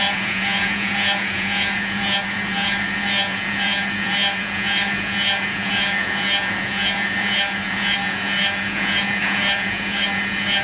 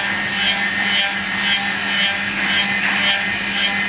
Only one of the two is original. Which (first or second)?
second